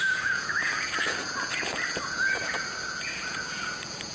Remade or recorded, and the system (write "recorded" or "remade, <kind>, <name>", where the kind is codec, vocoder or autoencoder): remade, vocoder, Vocos